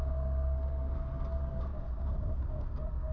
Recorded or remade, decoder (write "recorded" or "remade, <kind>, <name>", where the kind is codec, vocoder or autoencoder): remade, codec, SNAC